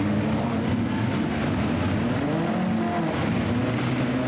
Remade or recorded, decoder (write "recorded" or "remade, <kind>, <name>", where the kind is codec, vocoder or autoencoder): recorded